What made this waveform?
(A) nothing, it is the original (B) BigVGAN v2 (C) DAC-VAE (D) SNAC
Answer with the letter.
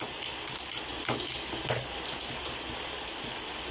A